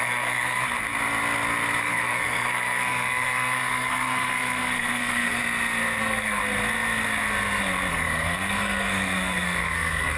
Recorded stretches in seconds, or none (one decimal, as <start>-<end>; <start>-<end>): 0.6-1.8; 5.4-6.0; 6.4-7.9